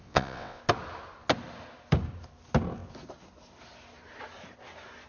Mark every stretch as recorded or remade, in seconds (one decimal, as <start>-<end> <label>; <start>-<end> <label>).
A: 0.0-0.6 remade; 0.6-5.1 recorded